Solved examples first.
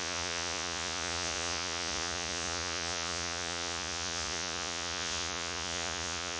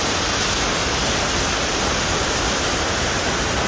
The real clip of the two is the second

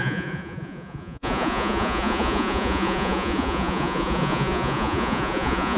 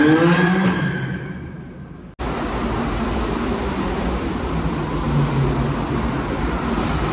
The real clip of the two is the second